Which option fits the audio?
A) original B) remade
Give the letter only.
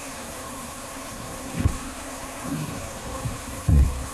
B